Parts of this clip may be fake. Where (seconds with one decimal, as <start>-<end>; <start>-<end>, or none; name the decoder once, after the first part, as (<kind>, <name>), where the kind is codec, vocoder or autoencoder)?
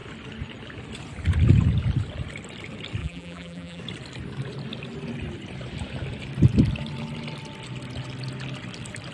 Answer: 3.0-3.8 (vocoder, BigVGAN v2)